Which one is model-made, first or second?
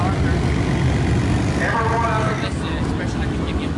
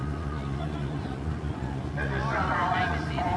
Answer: second